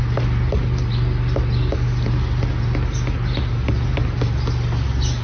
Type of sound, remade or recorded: recorded